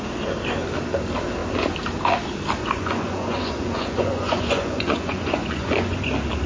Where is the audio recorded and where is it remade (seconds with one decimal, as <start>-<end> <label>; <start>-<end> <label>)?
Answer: 0.0-2.6 recorded; 2.6-6.1 remade; 6.1-6.5 recorded